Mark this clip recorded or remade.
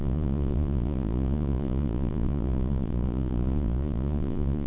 remade